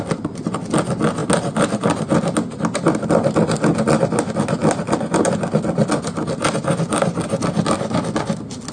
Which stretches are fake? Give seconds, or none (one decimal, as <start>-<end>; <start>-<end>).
none